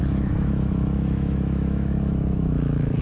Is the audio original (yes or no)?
no